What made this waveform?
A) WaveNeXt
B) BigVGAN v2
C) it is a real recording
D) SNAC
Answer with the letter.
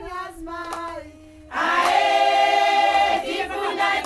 C